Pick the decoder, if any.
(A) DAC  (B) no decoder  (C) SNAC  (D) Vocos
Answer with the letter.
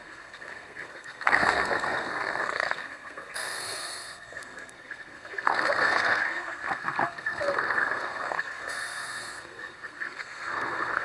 C